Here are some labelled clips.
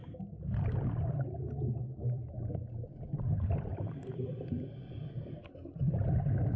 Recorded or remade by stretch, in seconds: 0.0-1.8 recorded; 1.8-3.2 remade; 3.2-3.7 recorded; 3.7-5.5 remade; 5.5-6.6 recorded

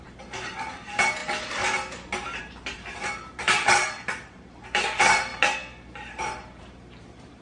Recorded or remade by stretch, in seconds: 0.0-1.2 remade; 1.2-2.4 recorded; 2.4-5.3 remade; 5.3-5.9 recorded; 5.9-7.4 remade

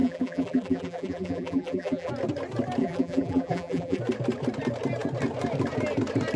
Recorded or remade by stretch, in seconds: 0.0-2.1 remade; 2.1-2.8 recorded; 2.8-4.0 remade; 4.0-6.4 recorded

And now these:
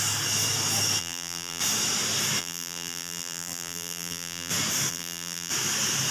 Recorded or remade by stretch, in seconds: 0.0-1.0 recorded; 1.0-1.6 remade; 1.6-2.4 recorded; 2.4-4.5 remade; 4.5-4.9 recorded; 4.9-5.5 remade; 5.5-6.1 recorded

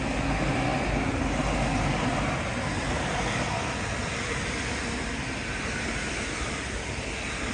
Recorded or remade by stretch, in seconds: 0.0-7.5 recorded

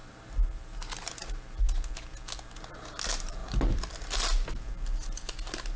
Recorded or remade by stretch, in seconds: 0.0-1.3 remade; 1.3-5.8 recorded

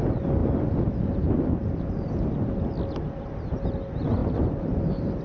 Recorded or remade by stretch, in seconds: 0.0-0.4 recorded; 0.4-3.5 remade; 3.5-4.2 recorded; 4.2-5.2 remade